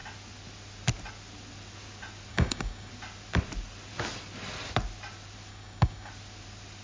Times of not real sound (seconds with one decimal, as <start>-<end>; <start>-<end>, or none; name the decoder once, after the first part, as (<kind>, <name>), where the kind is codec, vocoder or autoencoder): 2.3-2.9 (codec, DAC); 5.5-6.1

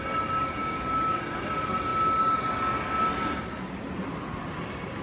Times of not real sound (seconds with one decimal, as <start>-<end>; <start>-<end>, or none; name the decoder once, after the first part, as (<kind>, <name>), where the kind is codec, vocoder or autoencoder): 0.6-1.2 (codec, DAC)

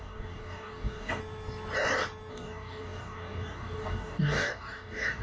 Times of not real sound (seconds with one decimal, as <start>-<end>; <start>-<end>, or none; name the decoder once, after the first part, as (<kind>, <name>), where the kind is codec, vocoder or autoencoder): 0.0-1.2 (codec, DAC); 2.3-5.2

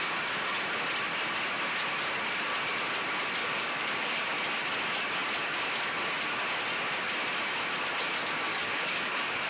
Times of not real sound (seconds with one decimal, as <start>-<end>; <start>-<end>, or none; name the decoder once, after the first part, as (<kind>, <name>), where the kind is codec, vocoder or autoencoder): 3.4-4.2 (codec, DAC); 8.5-9.5

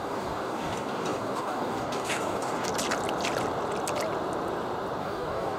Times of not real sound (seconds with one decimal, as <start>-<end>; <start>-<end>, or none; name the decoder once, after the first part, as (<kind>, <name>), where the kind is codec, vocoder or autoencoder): 0.0-2.7 (codec, DAC); 5.0-5.6